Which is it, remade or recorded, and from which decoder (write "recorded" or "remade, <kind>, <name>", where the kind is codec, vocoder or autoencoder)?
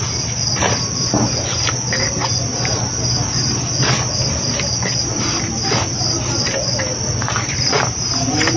recorded